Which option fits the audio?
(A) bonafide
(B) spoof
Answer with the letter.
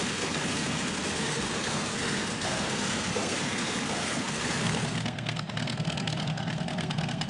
B